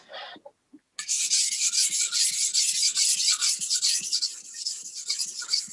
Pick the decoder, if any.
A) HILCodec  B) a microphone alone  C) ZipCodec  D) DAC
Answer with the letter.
B